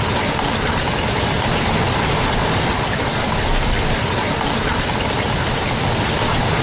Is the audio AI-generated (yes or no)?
no